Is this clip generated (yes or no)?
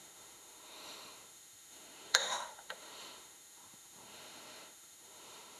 yes